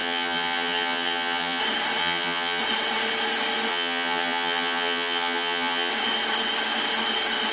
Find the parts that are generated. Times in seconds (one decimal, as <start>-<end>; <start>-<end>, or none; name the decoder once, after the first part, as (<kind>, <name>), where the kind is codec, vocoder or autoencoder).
0.0-1.6 (vocoder, HiFi-GAN); 2.0-2.6; 3.7-5.9